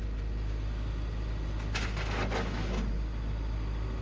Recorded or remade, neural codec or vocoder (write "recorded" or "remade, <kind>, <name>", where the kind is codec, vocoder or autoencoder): recorded